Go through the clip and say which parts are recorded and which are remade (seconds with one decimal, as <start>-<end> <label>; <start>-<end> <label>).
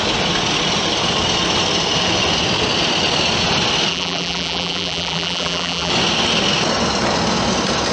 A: 0.0-3.9 recorded; 3.9-5.9 remade; 5.9-7.9 recorded